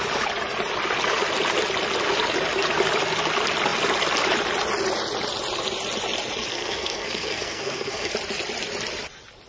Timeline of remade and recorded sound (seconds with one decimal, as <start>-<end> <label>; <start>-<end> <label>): 0.0-6.5 recorded; 6.5-8.1 remade; 8.1-9.5 recorded